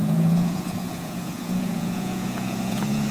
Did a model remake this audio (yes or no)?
yes